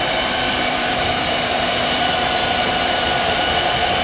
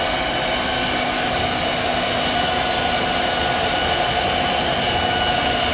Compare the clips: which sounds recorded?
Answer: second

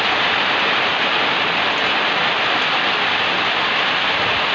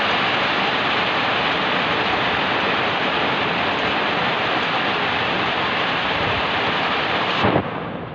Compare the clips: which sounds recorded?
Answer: first